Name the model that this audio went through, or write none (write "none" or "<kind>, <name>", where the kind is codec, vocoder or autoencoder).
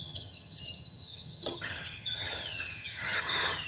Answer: vocoder, HiFi-GAN